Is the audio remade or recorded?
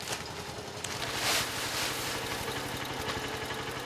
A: recorded